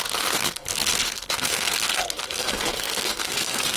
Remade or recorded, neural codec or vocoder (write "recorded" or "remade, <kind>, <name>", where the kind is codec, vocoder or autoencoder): remade, codec, SNAC